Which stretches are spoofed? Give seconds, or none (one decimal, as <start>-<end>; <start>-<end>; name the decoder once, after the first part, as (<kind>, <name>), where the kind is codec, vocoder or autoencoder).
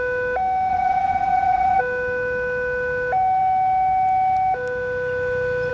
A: 0.7-1.8 (vocoder, WaveNeXt)